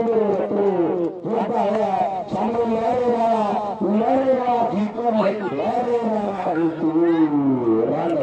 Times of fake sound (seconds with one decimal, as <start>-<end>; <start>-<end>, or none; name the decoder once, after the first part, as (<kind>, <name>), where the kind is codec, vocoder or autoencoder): 4.8-5.4 (codec, SNAC); 6.2-6.8